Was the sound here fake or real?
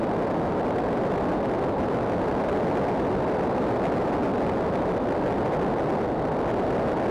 real